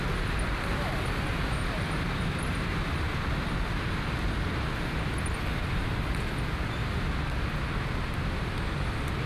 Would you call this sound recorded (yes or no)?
yes